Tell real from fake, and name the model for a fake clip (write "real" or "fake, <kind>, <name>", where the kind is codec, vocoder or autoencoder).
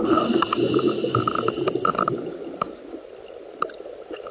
real